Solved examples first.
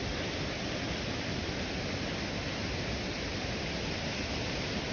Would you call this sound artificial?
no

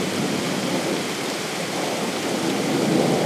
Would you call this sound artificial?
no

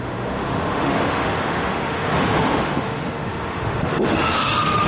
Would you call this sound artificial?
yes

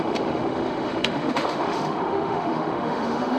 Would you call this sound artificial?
yes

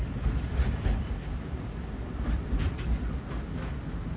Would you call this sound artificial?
no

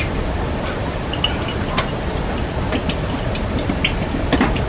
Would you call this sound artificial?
no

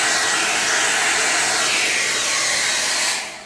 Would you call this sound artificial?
no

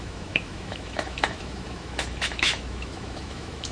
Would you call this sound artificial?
yes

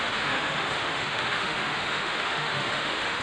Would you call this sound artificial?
yes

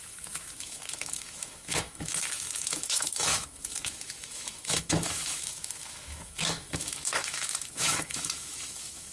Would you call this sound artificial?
yes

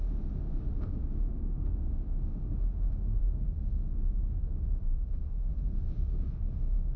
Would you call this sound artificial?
yes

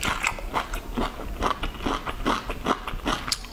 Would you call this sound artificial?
no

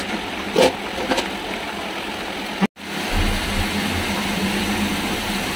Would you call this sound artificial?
no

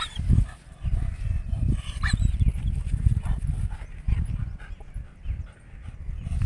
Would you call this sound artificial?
no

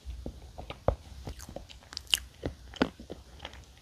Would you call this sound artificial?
no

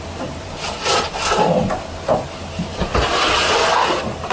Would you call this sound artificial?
no